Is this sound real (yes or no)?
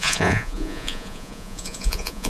no